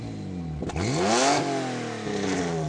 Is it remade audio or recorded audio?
recorded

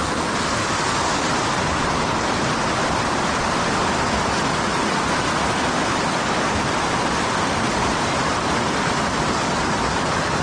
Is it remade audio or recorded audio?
recorded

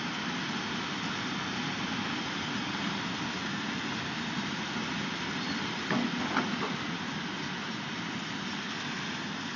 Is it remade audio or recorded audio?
recorded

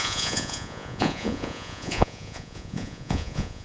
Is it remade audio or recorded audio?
remade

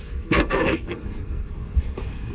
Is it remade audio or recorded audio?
remade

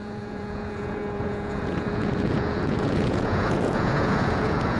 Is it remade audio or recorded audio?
remade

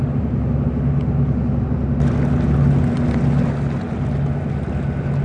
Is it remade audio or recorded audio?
recorded